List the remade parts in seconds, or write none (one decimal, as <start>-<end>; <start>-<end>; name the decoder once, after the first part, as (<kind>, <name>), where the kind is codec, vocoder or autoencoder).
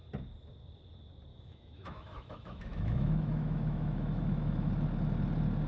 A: 1.3-4.7 (autoencoder, DAC-VAE)